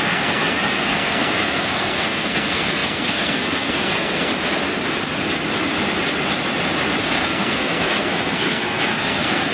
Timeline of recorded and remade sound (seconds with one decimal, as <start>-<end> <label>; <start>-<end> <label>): 0.0-4.3 remade; 4.3-7.0 recorded; 7.0-9.5 remade